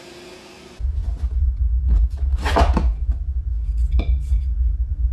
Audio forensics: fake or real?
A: real